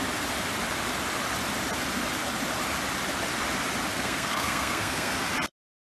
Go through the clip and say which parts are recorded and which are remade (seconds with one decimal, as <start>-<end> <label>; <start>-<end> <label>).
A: 0.0-3.9 recorded; 3.9-5.1 remade; 5.1-5.8 recorded